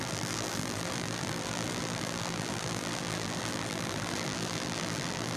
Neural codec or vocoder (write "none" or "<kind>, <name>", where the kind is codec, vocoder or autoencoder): vocoder, BigVGAN v2